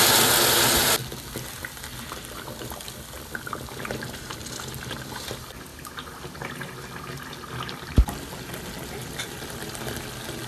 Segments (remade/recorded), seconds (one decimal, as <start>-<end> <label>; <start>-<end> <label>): 0.0-10.5 recorded